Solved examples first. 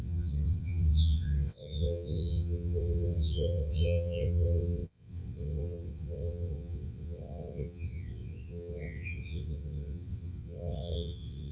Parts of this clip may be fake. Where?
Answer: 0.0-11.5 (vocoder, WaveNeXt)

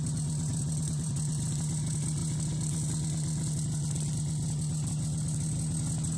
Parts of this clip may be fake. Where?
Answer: 0.5-1.3 (vocoder, BigVGAN v2)

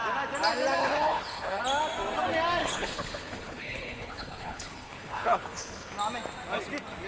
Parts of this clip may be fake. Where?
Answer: 0.8-1.6 (codec, HILCodec); 2.6-5.9

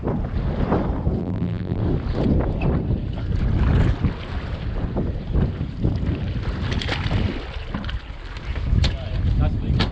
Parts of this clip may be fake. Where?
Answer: 1.2-1.8 (vocoder, BigVGAN v2)

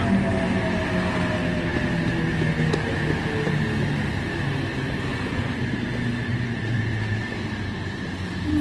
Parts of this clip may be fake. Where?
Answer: 5.1-5.7 (vocoder, Vocos); 6.3-7.2